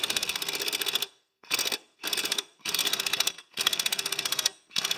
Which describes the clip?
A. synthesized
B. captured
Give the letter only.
A